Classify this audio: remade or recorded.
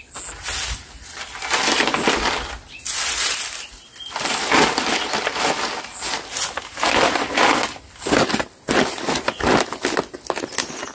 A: recorded